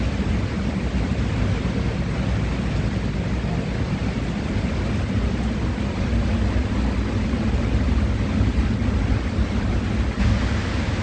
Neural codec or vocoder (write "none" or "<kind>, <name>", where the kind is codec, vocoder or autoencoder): none